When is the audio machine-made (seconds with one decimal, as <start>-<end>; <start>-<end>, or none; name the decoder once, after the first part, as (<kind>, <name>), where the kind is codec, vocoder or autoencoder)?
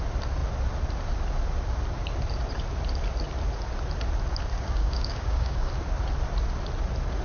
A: 4.5-5.7 (codec, DAC)